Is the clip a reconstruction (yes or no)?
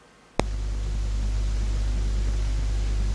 no